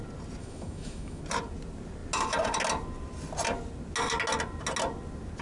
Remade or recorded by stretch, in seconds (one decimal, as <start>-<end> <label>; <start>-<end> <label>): 0.0-0.4 recorded; 0.4-1.2 remade; 1.2-5.4 recorded